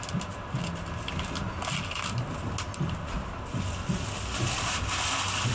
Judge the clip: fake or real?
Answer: real